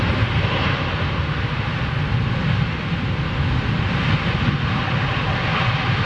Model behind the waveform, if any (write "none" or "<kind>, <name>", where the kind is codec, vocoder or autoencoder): none